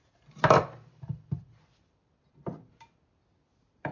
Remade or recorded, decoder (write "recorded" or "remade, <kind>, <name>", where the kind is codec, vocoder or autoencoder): remade, vocoder, BigVGAN v2